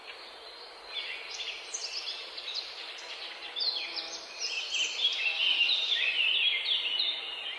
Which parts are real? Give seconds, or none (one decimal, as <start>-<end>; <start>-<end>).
0.0-2.2; 2.9-7.6

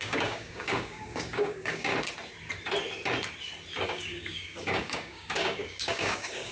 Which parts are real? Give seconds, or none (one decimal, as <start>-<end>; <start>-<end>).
1.9-3.8